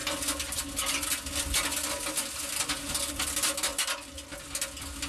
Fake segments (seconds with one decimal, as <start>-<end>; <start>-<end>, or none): none

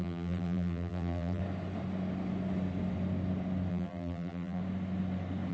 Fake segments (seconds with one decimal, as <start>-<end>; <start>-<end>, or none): 0.0-1.4; 3.7-4.6

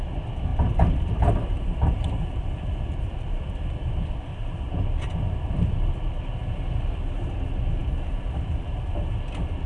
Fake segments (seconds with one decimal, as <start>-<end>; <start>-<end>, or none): 0.5-3.7; 4.3-5.9; 7.8-8.7